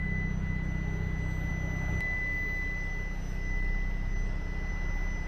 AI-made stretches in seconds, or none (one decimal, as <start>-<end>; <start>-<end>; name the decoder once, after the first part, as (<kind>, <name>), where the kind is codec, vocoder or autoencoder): none